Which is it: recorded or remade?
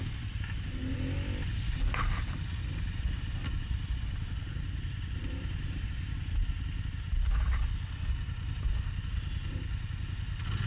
recorded